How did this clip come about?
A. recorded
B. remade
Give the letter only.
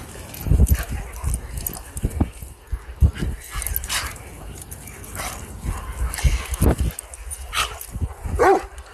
A